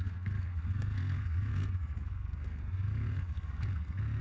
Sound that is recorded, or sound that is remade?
remade